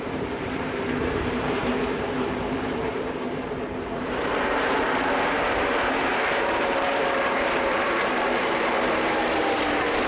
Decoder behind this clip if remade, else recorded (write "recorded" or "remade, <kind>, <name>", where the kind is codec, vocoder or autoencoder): remade, vocoder, BigVGAN v2